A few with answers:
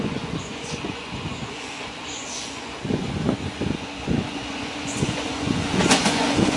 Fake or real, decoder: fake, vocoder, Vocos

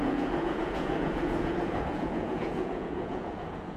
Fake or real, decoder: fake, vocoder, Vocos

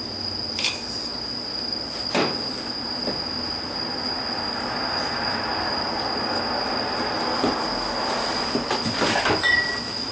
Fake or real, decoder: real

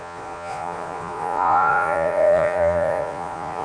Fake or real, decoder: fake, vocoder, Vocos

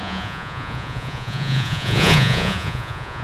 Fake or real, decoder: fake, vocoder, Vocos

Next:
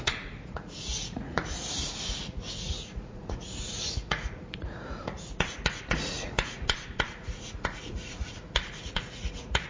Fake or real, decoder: fake, vocoder, Vocos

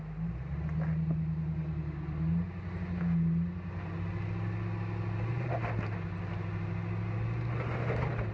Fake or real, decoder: real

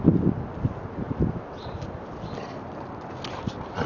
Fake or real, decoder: real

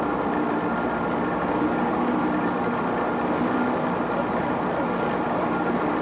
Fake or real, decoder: real